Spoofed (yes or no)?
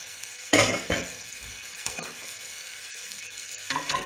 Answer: yes